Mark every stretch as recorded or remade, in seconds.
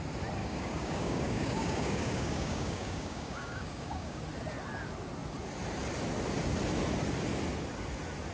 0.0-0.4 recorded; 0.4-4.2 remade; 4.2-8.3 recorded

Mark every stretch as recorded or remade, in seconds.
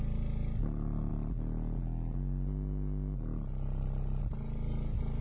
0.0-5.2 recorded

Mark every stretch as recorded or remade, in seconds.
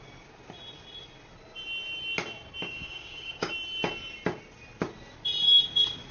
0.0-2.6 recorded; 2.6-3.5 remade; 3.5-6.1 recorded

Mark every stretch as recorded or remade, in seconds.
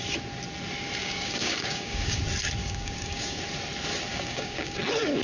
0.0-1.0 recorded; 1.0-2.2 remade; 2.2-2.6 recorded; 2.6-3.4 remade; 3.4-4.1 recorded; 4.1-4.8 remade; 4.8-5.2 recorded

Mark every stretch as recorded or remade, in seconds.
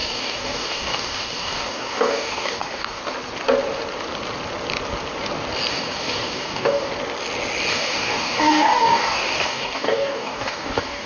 0.0-3.0 remade; 3.0-5.7 recorded; 5.7-6.9 remade; 6.9-7.7 recorded; 7.7-11.1 remade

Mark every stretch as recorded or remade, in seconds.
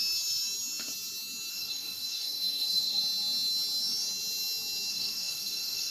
0.0-1.5 recorded; 1.5-3.0 remade; 3.0-4.9 recorded; 4.9-5.9 remade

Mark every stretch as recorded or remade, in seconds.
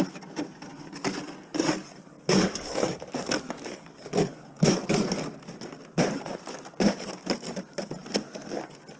0.0-0.7 recorded; 0.7-5.2 remade; 5.2-9.0 recorded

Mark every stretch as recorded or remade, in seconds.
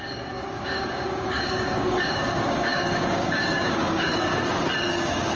0.0-4.3 remade; 4.3-4.8 recorded; 4.8-5.4 remade